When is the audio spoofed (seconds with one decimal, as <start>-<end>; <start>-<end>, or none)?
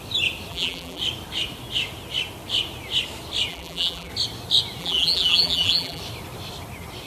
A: 0.5-1.0; 3.5-4.1; 4.8-6.0